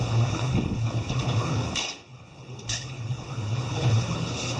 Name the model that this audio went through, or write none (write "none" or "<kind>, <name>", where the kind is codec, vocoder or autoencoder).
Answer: codec, HILCodec